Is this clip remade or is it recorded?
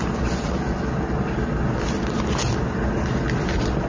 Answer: recorded